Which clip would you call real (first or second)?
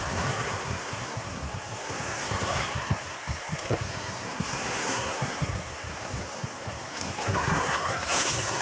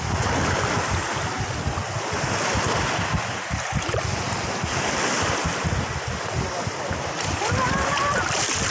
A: second